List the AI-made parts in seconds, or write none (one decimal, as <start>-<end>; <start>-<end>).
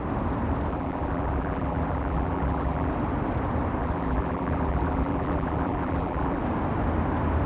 0.7-2.9; 3.8-6.4